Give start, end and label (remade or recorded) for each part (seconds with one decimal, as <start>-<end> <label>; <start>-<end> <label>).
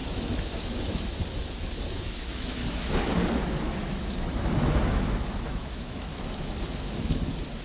0.0-2.6 remade; 2.6-3.3 recorded; 3.3-7.6 remade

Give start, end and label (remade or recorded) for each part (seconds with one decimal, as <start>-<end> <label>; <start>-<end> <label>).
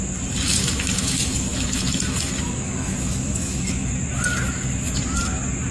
0.0-0.5 recorded; 0.5-3.9 remade; 3.9-5.7 recorded